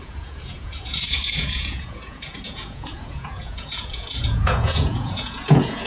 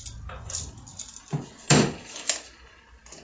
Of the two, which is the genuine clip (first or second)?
second